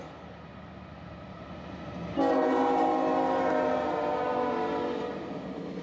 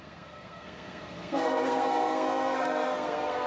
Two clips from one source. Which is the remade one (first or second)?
second